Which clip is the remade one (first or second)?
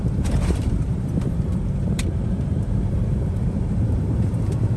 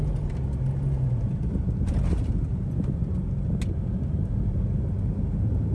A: first